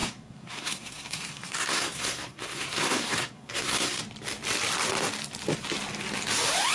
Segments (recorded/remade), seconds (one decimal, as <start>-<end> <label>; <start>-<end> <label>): 0.0-4.0 remade; 4.0-6.7 recorded